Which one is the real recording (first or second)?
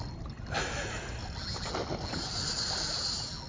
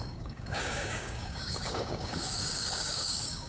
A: first